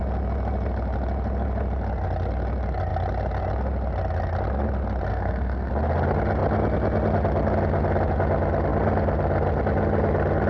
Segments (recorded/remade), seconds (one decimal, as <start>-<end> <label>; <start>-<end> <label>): 0.0-5.1 recorded; 5.1-5.7 remade; 5.7-10.5 recorded